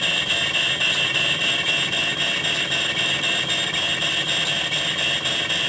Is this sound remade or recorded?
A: recorded